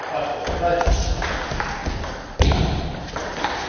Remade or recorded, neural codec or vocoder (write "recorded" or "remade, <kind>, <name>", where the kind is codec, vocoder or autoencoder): recorded